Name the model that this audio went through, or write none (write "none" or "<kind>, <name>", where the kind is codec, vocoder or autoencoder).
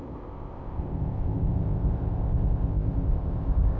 codec, ZipCodec